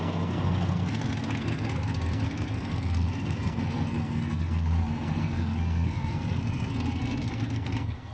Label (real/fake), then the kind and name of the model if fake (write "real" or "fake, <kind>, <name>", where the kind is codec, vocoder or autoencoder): fake, codec, SNAC